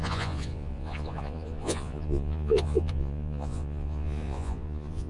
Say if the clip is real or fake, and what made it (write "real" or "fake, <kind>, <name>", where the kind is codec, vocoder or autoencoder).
fake, vocoder, Vocos